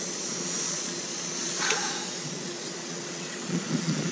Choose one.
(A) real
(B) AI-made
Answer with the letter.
B